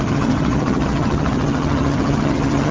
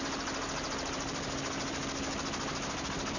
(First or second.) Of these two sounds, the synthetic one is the first